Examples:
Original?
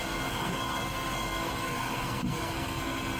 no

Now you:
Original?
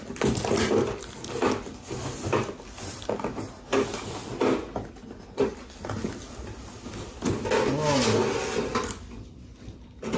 yes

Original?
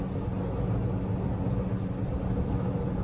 yes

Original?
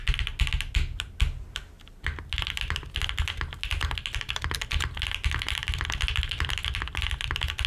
yes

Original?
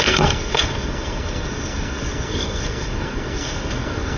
no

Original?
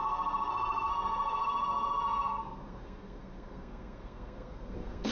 no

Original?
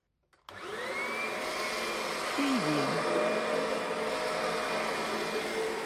yes